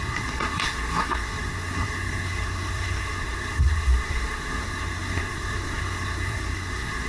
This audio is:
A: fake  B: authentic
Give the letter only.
A